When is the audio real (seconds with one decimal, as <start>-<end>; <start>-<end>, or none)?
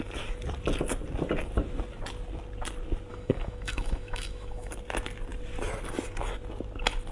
0.0-3.1; 4.7-7.1